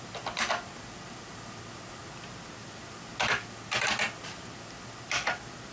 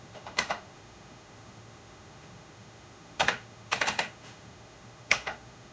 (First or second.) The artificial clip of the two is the second